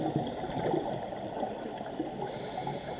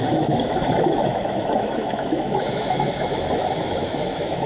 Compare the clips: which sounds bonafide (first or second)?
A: first